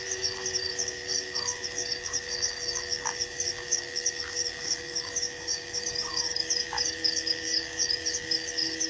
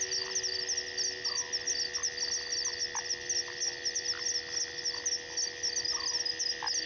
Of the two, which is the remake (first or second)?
first